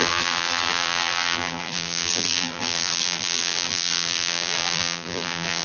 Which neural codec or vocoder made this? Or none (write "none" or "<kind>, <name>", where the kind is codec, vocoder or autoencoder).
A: vocoder, BigVGAN v2